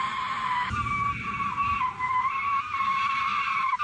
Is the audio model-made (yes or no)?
yes